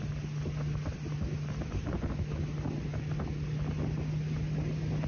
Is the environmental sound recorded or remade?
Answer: recorded